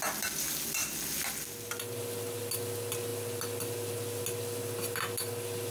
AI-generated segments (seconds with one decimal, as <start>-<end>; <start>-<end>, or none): none